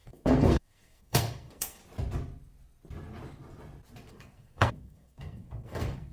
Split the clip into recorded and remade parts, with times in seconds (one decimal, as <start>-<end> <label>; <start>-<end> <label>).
0.0-1.8 remade; 1.8-4.1 recorded; 4.1-6.1 remade